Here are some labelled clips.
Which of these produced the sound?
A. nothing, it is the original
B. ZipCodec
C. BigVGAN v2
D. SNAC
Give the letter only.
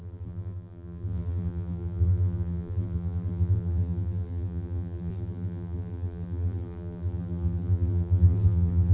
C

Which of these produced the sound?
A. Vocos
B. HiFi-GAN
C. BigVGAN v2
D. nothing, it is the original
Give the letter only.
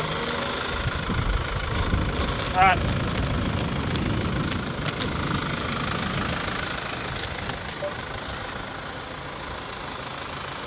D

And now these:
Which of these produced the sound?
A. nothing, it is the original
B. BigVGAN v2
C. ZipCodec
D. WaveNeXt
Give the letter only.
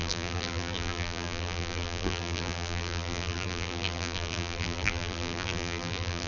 B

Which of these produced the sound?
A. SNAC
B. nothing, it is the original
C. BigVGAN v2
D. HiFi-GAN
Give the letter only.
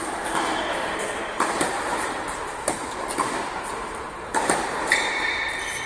C